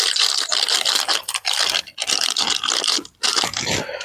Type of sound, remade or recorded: remade